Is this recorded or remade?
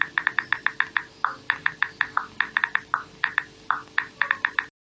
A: recorded